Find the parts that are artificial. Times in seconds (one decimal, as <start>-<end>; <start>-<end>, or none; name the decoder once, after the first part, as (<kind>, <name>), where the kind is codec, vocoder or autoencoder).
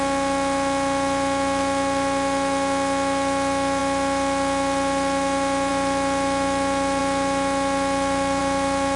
none